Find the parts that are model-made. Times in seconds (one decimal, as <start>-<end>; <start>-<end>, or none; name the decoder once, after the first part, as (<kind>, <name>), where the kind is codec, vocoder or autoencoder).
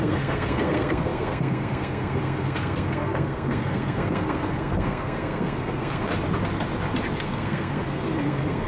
0.0-6.1 (codec, SNAC); 7.2-8.7